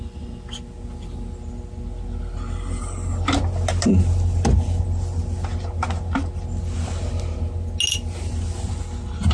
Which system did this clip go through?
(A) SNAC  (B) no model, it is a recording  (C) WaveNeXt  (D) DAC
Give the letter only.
B